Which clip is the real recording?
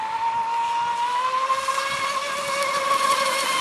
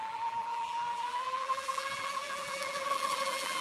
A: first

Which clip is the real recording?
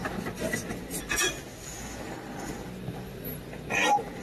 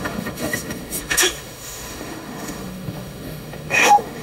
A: first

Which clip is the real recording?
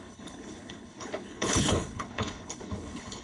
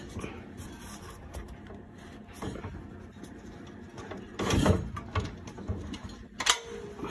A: second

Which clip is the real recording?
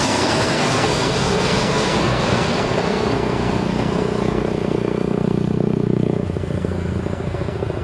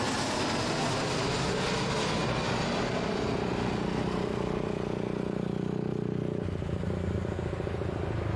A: second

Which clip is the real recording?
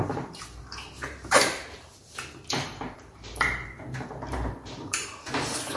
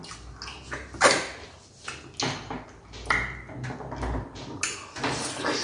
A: second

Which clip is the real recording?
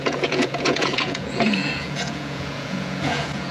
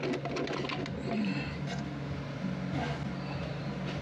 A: second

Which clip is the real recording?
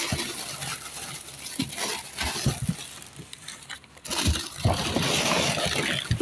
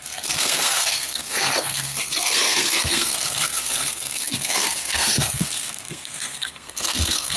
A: first